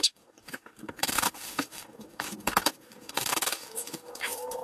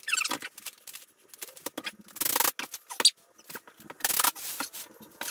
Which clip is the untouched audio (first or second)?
second